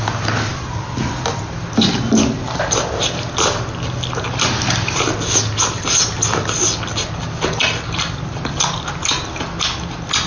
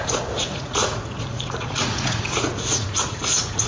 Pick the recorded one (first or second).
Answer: first